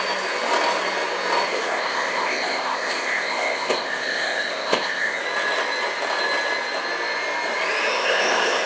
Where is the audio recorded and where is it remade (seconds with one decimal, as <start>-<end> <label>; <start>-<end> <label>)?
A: 0.0-1.5 recorded; 1.5-5.2 remade; 5.2-7.9 recorded; 7.9-8.7 remade